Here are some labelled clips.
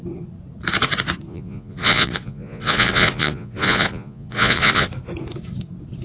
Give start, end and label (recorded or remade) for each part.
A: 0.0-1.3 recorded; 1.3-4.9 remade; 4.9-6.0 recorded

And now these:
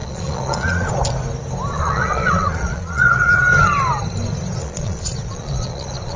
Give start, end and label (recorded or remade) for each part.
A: 0.0-0.9 remade; 0.9-1.7 recorded; 1.7-3.4 remade; 3.4-4.6 recorded; 4.6-6.2 remade

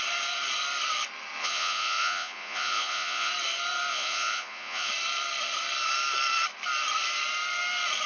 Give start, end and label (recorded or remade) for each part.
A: 0.0-1.4 recorded; 1.4-3.3 remade; 3.3-3.9 recorded; 3.9-4.9 remade; 4.9-8.1 recorded

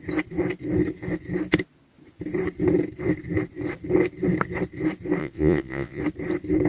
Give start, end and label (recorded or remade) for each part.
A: 0.0-5.2 recorded; 5.2-6.0 remade; 6.0-6.7 recorded

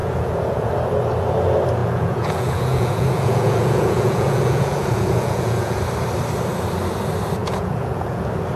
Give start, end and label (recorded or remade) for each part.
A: 0.0-0.7 remade; 0.7-1.8 recorded; 1.8-5.8 remade; 5.8-7.4 recorded; 7.4-8.2 remade; 8.2-8.6 recorded

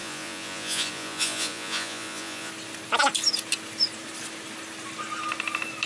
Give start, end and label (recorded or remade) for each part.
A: 0.0-2.5 remade; 2.5-5.9 recorded

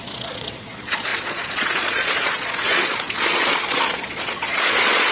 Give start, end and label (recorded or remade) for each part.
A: 0.0-5.1 remade

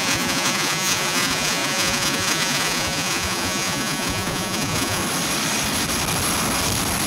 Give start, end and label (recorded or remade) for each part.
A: 0.0-5.0 remade; 5.0-7.1 recorded